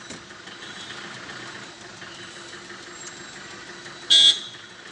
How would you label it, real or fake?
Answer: real